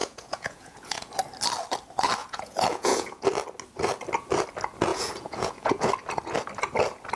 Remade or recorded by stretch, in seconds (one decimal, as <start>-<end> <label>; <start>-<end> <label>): 0.0-1.1 remade; 1.1-2.2 recorded; 2.2-3.2 remade; 3.2-4.9 recorded; 4.9-5.9 remade; 5.9-7.2 recorded